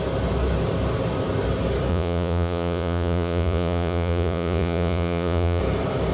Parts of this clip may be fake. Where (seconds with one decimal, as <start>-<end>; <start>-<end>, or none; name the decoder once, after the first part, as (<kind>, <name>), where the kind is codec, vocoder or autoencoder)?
1.9-5.6 (vocoder, Vocos)